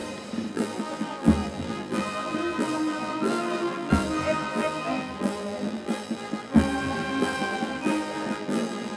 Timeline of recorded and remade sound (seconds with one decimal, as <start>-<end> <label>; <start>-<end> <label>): 0.0-0.5 recorded; 0.5-9.0 remade